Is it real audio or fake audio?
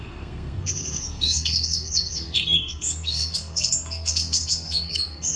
fake